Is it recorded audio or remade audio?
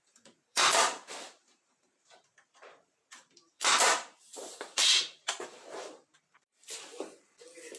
remade